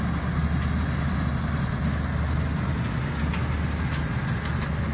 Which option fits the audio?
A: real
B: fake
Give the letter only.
A